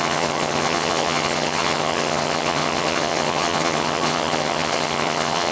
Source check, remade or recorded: remade